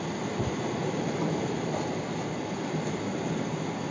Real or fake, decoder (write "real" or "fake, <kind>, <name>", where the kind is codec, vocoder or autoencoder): fake, vocoder, BigVGAN v2